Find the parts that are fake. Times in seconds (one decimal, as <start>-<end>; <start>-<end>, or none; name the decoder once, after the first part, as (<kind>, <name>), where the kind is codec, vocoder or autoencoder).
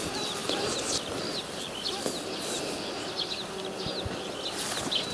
none